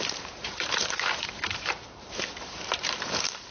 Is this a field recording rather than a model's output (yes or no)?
no